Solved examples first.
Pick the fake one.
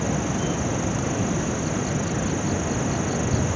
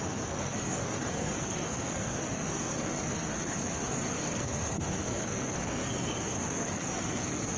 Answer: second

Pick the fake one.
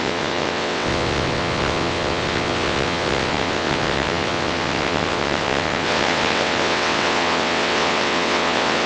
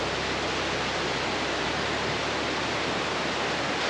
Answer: first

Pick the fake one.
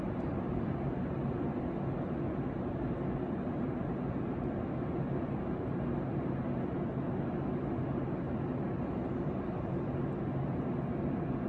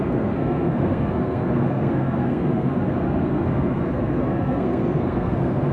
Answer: second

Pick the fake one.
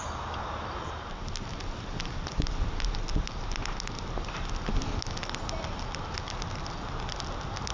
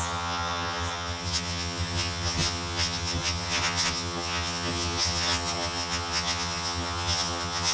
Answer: second